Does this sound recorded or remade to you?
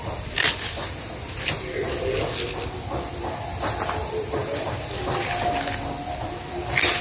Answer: recorded